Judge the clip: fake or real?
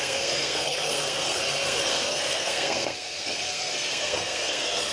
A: fake